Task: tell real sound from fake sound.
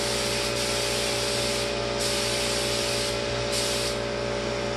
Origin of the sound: real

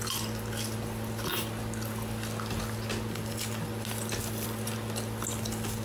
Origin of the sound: real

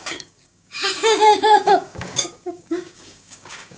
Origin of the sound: fake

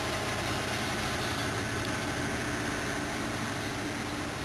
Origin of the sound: real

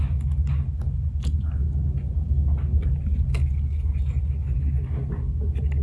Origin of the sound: real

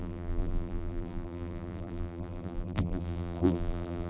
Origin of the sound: fake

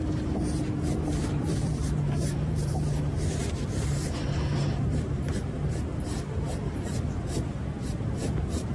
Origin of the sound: fake